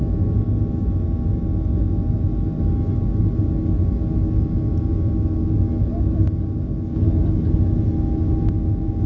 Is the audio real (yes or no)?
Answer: yes